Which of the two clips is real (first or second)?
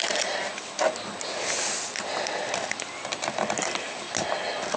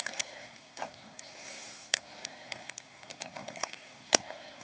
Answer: first